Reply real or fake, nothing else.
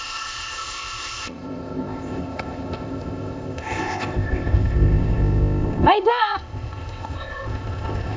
fake